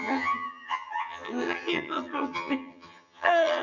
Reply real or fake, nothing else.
fake